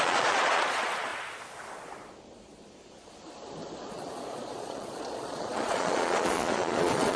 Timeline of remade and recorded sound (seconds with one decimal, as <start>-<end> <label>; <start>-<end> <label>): 0.0-1.1 remade; 1.1-3.9 recorded; 3.9-7.2 remade